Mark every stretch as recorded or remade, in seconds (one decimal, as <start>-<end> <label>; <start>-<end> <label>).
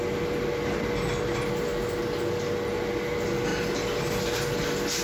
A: 0.0-5.0 recorded